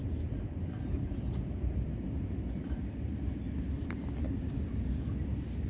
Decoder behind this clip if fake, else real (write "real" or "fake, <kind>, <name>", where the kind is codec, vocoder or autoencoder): real